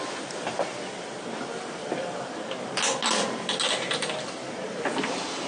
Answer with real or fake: real